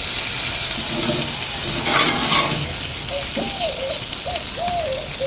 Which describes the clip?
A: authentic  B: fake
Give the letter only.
A